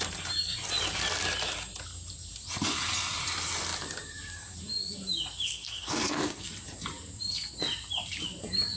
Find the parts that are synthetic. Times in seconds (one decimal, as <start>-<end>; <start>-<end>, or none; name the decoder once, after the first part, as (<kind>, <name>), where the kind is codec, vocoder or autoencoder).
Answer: 5.5-6.5 (codec, SNAC)